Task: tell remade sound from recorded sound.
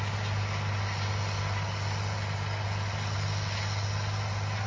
recorded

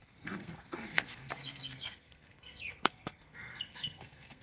remade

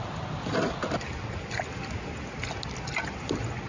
recorded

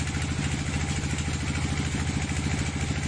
recorded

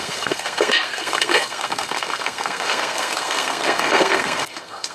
remade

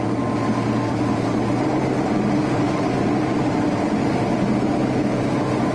recorded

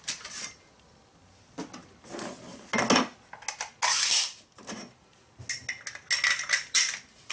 recorded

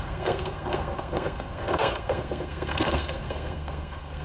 remade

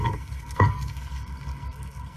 remade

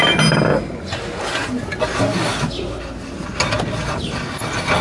recorded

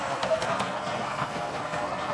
remade